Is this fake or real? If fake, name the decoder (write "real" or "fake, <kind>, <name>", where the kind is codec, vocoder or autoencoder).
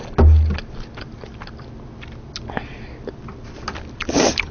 real